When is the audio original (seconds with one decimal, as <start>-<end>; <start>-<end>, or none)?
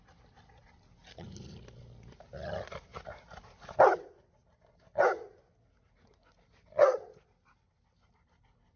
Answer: 0.0-8.8